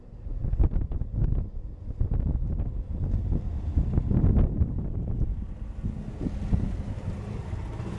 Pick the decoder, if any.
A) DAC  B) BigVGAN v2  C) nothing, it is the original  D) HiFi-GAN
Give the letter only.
C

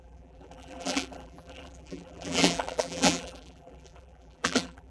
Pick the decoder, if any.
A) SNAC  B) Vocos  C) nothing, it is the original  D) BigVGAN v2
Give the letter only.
D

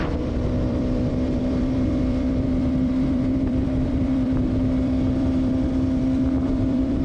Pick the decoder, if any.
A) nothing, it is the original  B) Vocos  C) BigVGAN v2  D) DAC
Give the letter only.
C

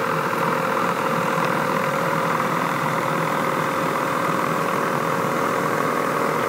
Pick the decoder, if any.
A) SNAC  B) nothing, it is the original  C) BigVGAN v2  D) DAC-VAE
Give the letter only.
C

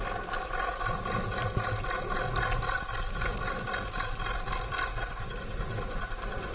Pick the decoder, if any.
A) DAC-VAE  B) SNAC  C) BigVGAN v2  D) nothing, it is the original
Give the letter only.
D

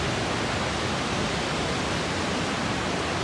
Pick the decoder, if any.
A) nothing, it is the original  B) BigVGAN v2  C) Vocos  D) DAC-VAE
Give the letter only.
A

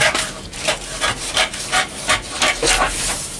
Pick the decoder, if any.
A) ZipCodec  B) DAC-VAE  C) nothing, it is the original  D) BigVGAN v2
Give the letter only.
D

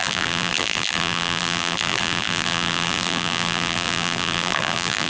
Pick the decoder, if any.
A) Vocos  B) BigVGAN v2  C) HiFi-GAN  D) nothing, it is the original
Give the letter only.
B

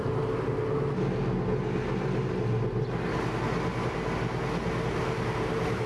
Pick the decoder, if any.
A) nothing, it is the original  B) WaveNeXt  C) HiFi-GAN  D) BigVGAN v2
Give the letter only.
A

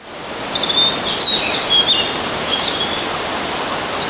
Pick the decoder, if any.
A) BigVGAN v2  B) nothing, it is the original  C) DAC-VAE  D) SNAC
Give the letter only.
B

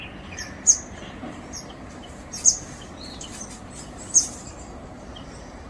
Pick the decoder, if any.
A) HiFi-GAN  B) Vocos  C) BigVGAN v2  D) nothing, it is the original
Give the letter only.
C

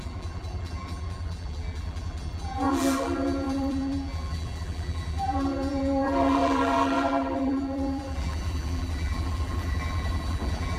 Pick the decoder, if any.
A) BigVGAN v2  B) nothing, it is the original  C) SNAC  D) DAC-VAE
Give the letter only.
A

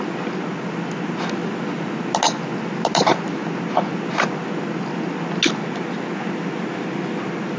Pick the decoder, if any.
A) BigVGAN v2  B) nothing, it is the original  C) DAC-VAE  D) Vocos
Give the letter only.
B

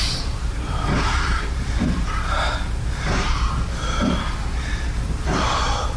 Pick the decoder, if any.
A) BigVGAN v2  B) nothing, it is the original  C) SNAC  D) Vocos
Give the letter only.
A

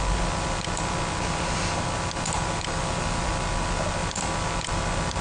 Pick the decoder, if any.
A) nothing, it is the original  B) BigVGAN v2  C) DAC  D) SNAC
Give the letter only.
A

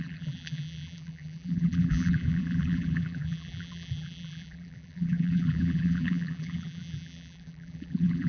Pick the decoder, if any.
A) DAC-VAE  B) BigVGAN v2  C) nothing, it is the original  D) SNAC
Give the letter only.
B